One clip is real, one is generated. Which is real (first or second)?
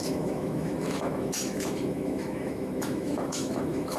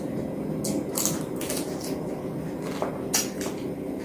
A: second